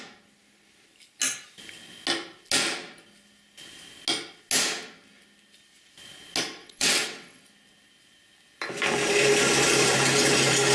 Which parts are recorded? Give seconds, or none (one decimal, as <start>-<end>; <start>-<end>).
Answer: 0.0-6.6; 7.4-10.7